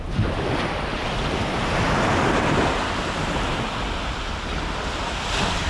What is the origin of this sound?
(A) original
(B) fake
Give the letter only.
A